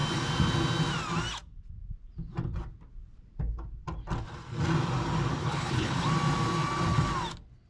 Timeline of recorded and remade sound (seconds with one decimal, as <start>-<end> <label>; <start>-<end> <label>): 0.0-5.4 recorded; 5.4-6.0 remade; 6.0-7.7 recorded